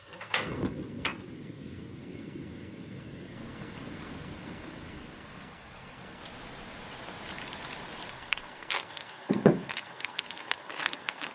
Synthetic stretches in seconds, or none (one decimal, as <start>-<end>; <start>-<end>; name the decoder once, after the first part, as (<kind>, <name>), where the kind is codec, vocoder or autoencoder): 0.0-6.2 (codec, SNAC); 8.1-11.3